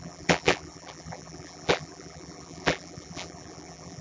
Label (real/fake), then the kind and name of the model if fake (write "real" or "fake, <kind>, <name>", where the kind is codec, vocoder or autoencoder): fake, vocoder, BigVGAN v2